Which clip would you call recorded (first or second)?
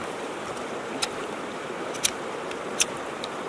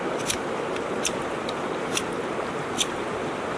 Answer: second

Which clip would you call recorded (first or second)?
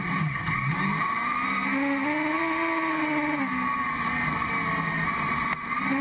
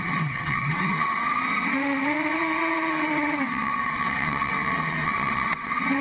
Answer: first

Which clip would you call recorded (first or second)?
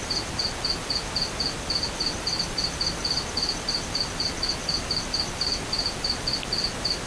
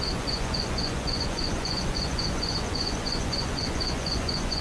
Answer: first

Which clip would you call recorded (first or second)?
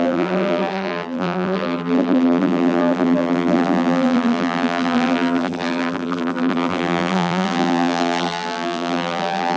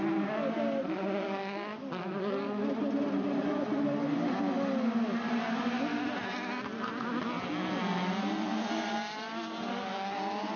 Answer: second